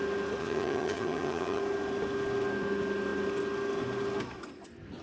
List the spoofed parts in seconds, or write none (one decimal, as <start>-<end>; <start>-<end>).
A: 0.4-1.6